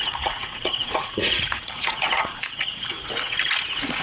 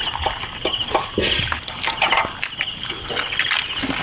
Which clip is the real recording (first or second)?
second